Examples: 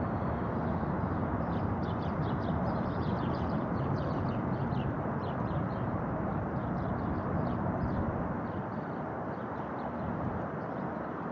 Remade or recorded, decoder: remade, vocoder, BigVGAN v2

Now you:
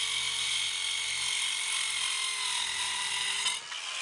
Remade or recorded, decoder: recorded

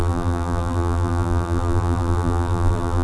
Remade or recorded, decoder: remade, vocoder, BigVGAN v2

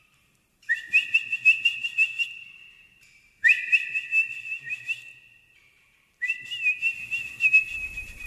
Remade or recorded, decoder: remade, vocoder, BigVGAN v2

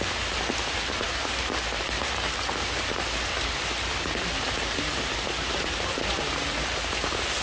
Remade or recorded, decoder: remade, vocoder, BigVGAN v2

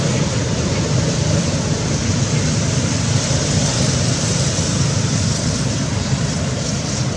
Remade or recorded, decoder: remade, vocoder, BigVGAN v2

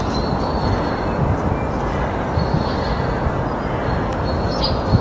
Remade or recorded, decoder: recorded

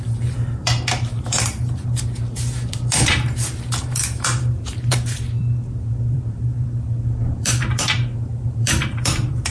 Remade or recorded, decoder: remade, vocoder, BigVGAN v2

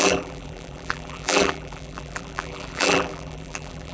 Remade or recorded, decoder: remade, vocoder, BigVGAN v2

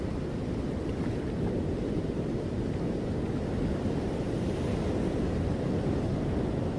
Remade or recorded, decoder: recorded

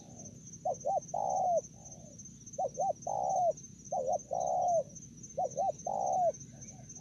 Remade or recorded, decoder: recorded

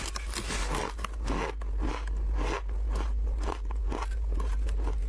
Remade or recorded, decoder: recorded